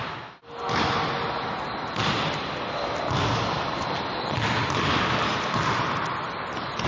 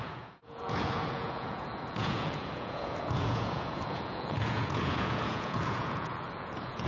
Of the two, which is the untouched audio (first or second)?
first